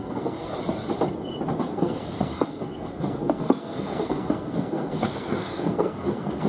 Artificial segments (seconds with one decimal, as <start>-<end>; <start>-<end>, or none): 0.0-0.5; 1.6-6.5